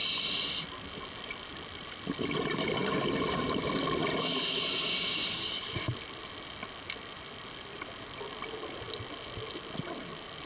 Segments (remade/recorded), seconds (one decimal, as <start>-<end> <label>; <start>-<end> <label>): 0.0-10.5 recorded